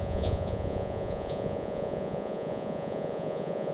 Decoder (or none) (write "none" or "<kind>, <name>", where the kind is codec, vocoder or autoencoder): vocoder, Vocos